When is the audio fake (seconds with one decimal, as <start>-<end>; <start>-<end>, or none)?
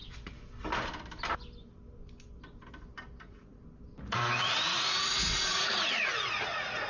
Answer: 3.2-3.6; 4.4-6.9